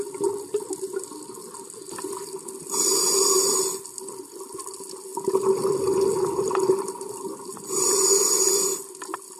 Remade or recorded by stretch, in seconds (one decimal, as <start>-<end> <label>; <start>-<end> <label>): 0.0-9.4 recorded